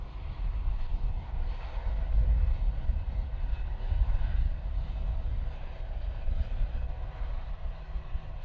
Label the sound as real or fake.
real